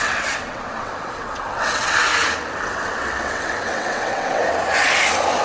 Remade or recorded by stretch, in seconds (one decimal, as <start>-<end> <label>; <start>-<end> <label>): 0.0-2.1 remade; 2.1-2.6 recorded; 2.6-4.4 remade; 4.4-5.4 recorded